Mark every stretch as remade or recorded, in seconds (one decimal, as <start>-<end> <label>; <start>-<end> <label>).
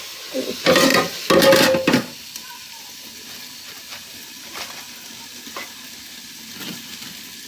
0.0-7.5 recorded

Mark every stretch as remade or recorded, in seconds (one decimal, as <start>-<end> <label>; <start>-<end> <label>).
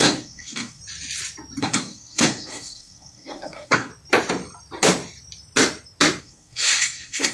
0.0-0.8 remade; 0.8-1.6 recorded; 1.6-3.9 remade; 3.9-6.2 recorded; 6.2-7.3 remade